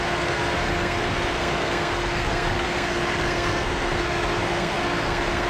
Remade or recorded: remade